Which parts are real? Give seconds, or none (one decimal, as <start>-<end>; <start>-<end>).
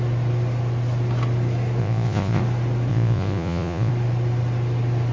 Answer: 0.0-1.8; 2.4-2.9; 3.9-5.1